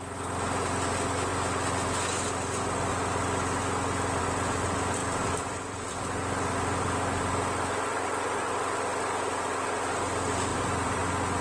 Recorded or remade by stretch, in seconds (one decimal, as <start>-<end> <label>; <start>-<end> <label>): 0.0-5.0 recorded; 5.0-6.0 remade; 6.0-10.5 recorded; 10.5-11.0 remade; 11.0-11.4 recorded